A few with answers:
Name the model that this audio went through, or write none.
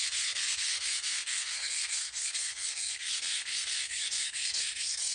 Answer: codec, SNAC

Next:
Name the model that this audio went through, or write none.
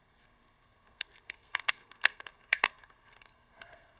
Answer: codec, SNAC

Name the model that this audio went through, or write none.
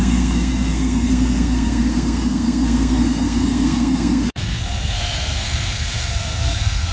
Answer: codec, SNAC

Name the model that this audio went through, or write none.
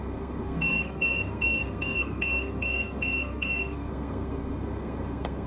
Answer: codec, SNAC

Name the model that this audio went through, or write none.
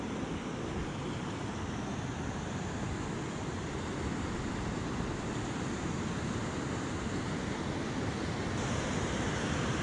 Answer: none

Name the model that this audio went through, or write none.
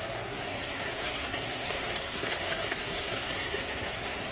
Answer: codec, SNAC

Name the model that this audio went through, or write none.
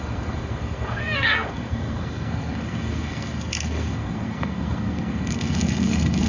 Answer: codec, SNAC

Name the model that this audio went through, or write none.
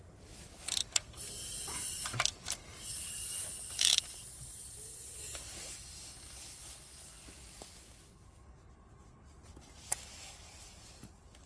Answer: none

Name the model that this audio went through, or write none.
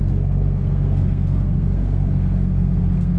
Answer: codec, SNAC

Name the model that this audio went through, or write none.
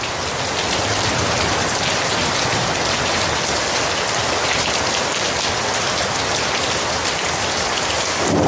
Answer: none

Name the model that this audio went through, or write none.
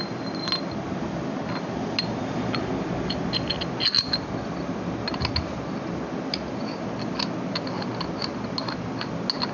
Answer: none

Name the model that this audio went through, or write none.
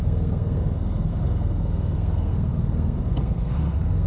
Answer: codec, SNAC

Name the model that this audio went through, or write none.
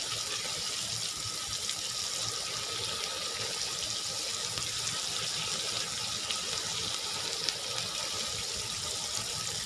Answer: none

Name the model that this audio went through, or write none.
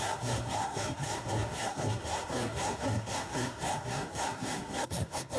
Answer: codec, SNAC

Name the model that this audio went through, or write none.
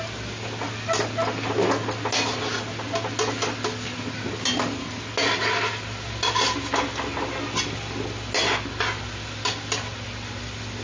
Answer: none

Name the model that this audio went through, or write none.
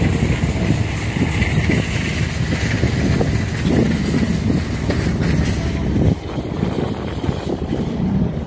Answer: none